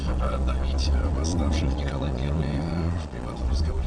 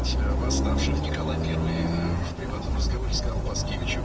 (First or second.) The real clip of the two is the second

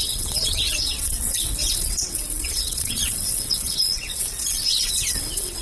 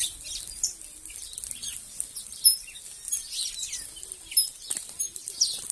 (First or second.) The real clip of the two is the second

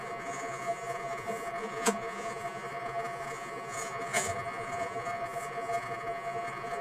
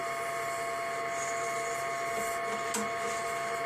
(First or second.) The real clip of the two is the second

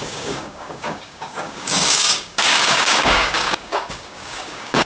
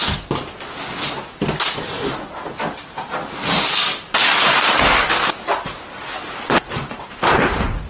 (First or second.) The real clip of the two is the second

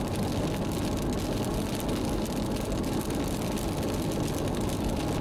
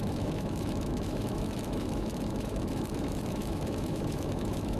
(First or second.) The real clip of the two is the first